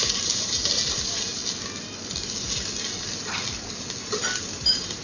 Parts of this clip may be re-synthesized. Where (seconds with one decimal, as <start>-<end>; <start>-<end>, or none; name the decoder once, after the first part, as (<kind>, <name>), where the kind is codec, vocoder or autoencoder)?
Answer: 0.0-1.4 (vocoder, BigVGAN v2); 4.4-5.0